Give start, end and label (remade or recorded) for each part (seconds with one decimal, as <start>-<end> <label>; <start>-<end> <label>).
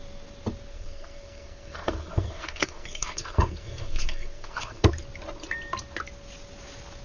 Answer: 0.0-0.7 recorded; 0.7-4.9 remade; 4.9-7.0 recorded